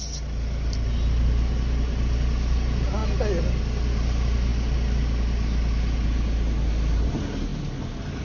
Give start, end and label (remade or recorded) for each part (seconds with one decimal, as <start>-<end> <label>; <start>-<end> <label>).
0.0-8.2 recorded